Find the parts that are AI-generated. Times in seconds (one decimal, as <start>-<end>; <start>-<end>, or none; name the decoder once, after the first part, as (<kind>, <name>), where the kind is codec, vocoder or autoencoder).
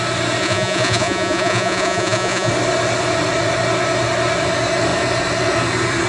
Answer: 0.4-2.5 (vocoder, Vocos)